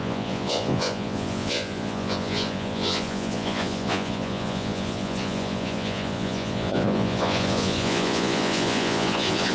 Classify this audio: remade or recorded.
remade